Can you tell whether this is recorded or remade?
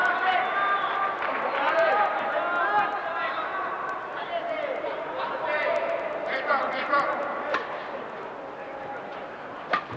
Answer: recorded